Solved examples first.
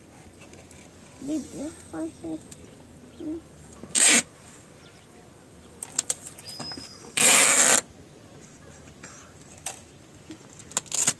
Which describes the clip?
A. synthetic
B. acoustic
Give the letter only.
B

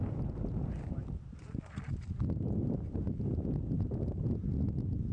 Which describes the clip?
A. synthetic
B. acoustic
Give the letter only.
B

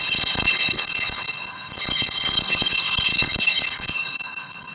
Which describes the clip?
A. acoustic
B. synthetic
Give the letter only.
B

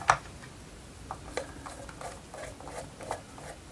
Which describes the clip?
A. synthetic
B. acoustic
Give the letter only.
B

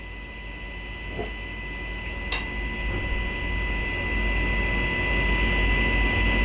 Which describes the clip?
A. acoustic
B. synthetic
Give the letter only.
A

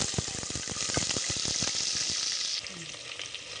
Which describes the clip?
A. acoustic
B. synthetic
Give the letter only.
A